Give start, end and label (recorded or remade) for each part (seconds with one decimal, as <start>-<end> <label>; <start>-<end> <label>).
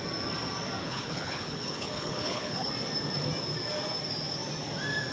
0.0-0.8 recorded; 0.8-2.7 remade; 2.7-5.1 recorded